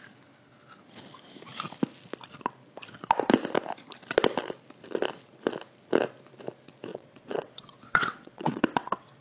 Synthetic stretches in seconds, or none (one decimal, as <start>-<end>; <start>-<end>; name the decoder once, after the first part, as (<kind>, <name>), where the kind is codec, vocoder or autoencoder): 6.9-9.2 (vocoder, WaveNeXt)